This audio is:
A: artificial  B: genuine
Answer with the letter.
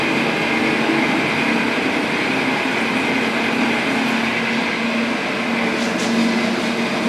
B